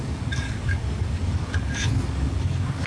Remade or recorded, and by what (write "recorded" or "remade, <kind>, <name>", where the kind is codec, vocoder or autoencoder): remade, codec, DAC